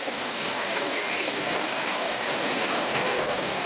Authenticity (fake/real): fake